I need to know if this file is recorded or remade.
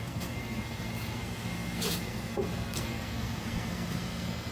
remade